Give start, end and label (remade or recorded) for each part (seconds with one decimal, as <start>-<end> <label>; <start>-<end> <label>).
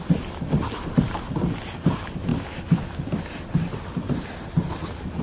0.0-5.2 recorded